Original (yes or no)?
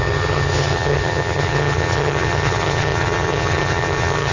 no